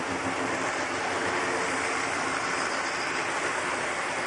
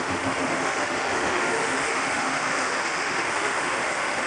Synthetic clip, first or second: second